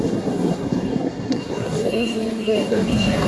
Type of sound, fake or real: fake